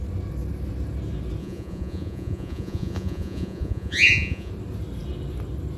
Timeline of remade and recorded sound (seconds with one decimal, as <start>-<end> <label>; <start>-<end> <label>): 0.0-1.4 recorded; 1.4-4.5 remade; 4.5-5.8 recorded